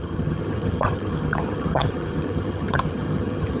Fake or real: fake